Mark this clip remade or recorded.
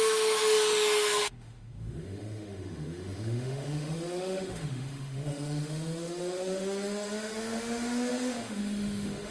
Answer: remade